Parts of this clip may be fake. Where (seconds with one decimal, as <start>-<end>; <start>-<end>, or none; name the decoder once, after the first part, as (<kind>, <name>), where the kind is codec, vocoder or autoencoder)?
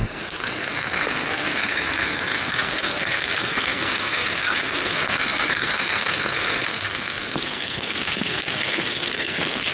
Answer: 0.0-9.7 (codec, SNAC)